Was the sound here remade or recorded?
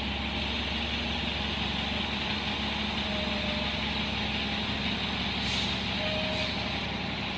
recorded